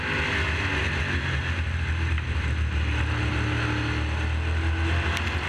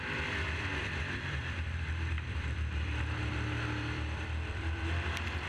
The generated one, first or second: second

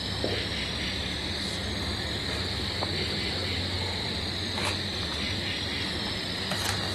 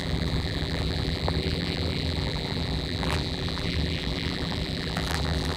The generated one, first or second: second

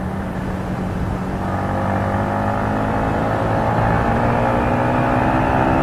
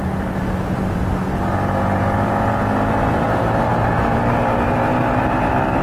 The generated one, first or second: second